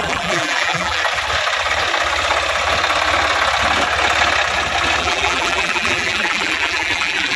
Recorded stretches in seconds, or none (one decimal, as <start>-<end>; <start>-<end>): 1.0-5.0